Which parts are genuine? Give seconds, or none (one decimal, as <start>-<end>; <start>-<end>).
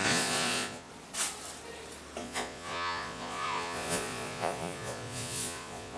0.9-2.2